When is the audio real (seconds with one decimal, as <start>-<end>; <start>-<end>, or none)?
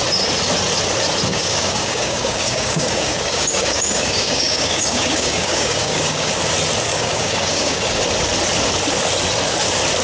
0.0-1.3; 6.3-6.9; 8.0-10.0